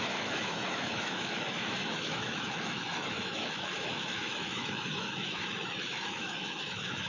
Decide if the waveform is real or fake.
fake